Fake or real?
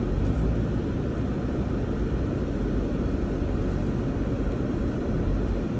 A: real